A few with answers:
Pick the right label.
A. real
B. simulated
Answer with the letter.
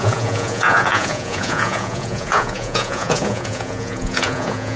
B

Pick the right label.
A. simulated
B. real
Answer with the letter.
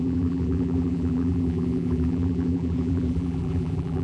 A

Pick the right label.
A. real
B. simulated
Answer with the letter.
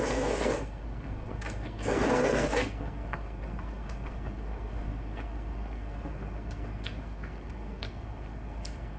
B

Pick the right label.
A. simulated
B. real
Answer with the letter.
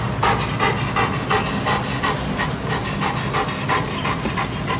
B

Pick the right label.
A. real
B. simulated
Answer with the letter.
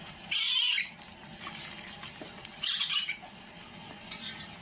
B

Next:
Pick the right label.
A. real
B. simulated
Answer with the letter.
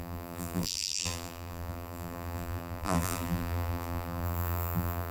B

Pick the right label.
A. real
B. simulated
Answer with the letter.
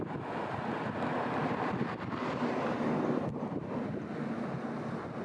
A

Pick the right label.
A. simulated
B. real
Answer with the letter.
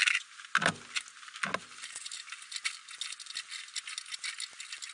B